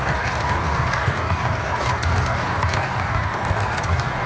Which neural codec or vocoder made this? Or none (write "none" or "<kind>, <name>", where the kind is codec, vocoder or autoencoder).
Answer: codec, DAC